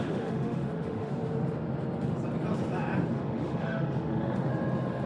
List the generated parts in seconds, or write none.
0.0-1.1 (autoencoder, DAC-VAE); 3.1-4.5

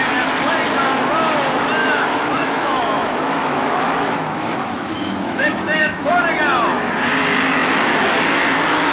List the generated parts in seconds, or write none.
1.8-6.1 (autoencoder, DAC-VAE)

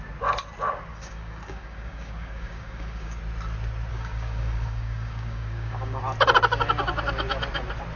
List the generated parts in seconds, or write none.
0.9-3.2 (codec, DAC); 3.9-6.0

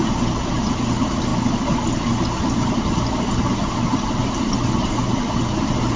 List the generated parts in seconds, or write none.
4.2-4.7 (vocoder, BigVGAN v2)